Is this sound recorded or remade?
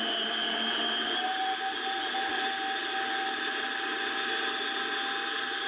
recorded